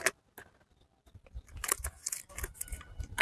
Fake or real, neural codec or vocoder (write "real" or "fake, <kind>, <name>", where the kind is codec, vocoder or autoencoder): real